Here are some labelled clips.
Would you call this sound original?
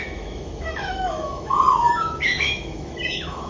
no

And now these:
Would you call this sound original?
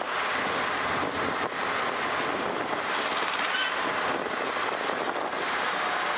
yes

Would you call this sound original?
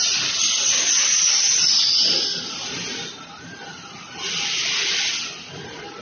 yes